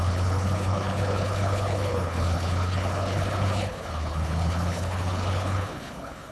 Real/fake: fake